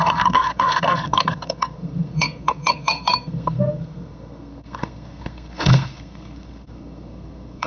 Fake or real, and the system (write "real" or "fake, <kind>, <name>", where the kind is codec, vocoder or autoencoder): fake, codec, SNAC